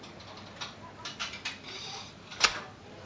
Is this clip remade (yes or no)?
no